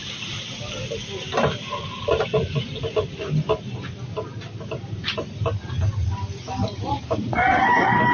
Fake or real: real